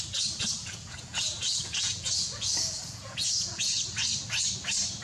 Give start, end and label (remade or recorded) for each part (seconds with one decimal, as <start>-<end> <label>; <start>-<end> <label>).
0.0-0.6 recorded; 0.6-3.6 remade; 3.6-5.0 recorded